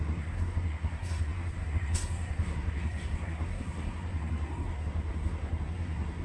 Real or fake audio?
fake